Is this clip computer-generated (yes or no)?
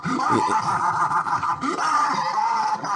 yes